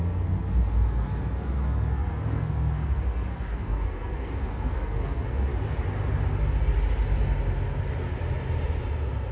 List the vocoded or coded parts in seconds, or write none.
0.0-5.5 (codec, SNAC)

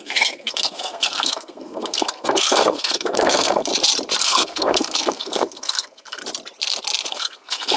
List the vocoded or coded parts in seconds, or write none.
0.0-3.7 (codec, SNAC); 4.2-6.2; 7.1-7.8

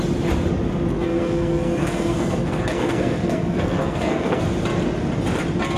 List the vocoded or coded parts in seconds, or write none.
0.9-4.4 (codec, SNAC)

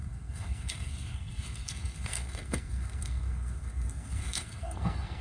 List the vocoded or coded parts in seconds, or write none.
0.0-5.2 (codec, SNAC)

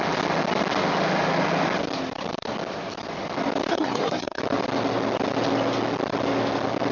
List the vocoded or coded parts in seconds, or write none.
3.7-4.4 (codec, SNAC)

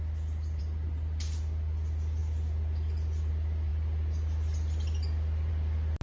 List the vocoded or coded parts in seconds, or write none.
none